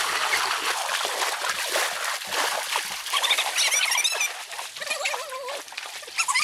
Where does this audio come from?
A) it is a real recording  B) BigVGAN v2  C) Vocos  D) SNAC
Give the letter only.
A